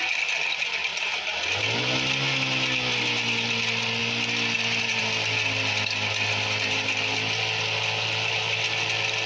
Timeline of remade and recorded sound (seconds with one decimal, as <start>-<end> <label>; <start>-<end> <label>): 0.0-9.3 recorded